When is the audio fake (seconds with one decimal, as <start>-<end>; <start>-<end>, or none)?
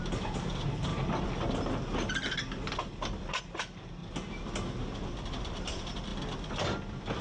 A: 0.0-0.9; 3.4-4.0; 5.4-6.1